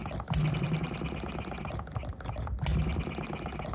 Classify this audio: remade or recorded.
recorded